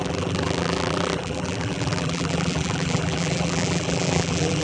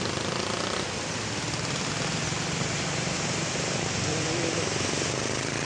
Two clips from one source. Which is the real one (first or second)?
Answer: second